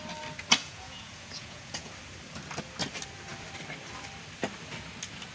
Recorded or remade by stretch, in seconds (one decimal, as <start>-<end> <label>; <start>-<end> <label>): 0.0-0.6 recorded; 0.6-1.9 remade; 1.9-5.3 recorded